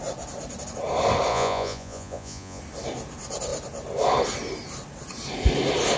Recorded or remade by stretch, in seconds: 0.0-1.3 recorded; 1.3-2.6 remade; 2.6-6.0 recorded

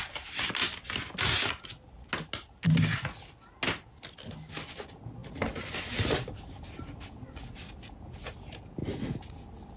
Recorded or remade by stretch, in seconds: 0.0-9.8 recorded

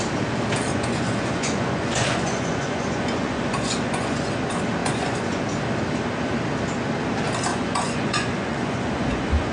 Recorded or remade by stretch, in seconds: 0.0-0.7 recorded; 0.7-4.3 remade; 4.3-4.8 recorded; 4.8-5.4 remade; 5.4-7.5 recorded; 7.5-9.5 remade